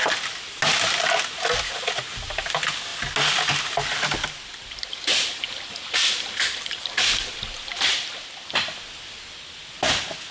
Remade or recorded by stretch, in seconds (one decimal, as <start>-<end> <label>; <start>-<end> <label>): 0.0-10.3 recorded